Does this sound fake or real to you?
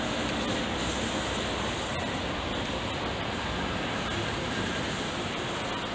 real